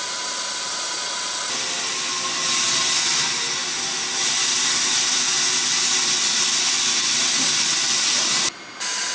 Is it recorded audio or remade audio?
recorded